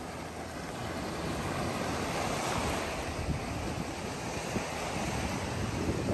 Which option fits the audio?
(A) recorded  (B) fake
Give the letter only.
A